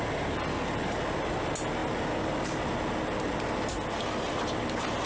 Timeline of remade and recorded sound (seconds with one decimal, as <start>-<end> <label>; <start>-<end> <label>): 0.0-5.1 recorded